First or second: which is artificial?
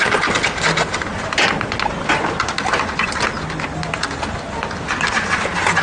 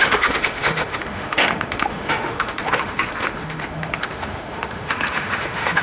second